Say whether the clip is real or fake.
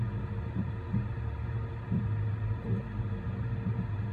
real